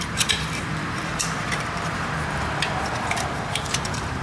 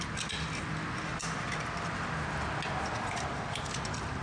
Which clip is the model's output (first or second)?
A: first